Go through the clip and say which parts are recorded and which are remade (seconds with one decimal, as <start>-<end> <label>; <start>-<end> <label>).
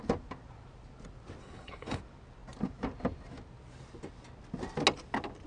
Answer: 0.0-1.4 recorded; 1.4-2.0 remade; 2.0-5.5 recorded